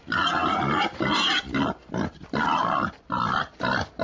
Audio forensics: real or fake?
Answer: real